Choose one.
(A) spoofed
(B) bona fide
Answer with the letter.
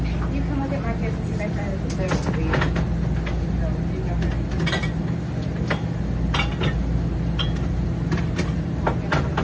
B